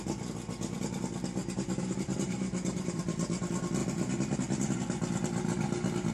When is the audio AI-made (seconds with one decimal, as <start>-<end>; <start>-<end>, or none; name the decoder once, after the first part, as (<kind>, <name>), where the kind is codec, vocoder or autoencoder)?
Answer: 1.4-3.0 (vocoder, BigVGAN v2)

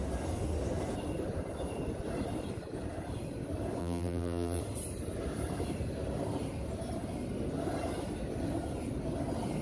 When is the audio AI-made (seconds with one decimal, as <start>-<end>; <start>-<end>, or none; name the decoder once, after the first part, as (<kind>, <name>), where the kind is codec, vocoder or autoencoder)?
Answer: 3.8-4.6 (vocoder, BigVGAN v2)

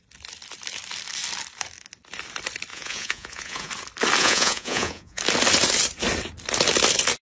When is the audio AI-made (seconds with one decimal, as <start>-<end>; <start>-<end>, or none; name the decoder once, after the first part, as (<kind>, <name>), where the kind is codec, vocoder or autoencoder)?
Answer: 2.7-3.7 (vocoder, Vocos); 4.2-5.2